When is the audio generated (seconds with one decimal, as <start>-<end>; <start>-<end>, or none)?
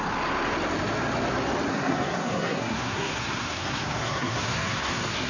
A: 1.7-5.3